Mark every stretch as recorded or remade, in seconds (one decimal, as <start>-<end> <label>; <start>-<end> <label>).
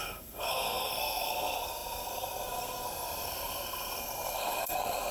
0.0-5.1 remade